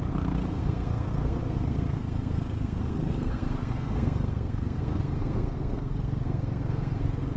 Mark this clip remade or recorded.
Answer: remade